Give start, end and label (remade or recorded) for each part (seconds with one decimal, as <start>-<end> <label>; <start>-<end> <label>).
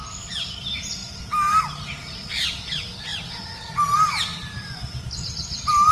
0.0-5.9 recorded